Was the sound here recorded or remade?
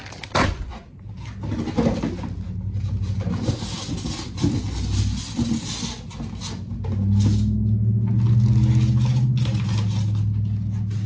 recorded